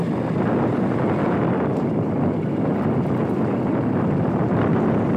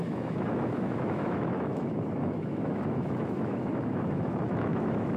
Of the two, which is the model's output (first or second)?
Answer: second